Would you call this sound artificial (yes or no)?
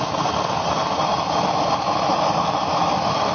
no